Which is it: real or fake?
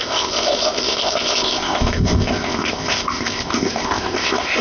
fake